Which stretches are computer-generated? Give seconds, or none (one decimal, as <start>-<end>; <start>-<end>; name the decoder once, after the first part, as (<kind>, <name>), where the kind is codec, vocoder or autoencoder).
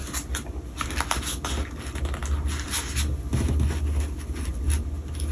none